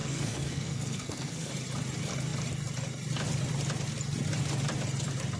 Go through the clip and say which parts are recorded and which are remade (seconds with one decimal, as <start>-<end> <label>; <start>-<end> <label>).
0.0-1.5 remade; 1.5-5.4 recorded